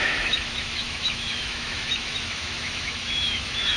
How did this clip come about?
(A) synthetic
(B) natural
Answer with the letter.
A